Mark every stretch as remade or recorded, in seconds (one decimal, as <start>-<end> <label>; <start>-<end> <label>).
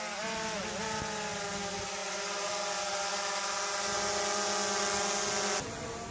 0.0-2.0 recorded; 2.0-2.5 remade; 2.5-6.1 recorded